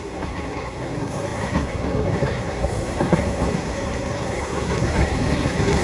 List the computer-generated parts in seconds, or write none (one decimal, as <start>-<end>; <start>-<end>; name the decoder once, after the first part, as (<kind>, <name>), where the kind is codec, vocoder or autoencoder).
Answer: 0.0-5.8 (codec, SNAC)